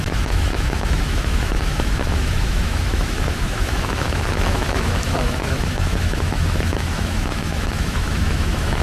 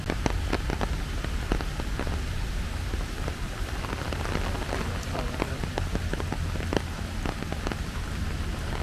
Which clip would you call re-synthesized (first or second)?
first